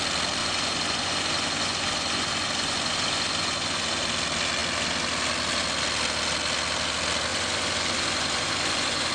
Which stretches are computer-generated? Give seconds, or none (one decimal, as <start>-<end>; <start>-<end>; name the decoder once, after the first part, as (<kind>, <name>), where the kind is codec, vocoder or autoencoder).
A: 0.4-4.0 (vocoder, Vocos); 7.3-9.1